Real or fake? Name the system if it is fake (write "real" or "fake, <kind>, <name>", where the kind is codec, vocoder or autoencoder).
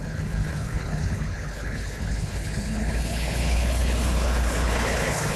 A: fake, codec, HILCodec